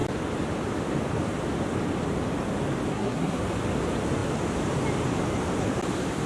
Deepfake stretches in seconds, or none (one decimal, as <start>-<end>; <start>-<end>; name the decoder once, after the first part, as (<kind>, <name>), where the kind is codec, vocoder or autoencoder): 2.9-3.4 (codec, SNAC)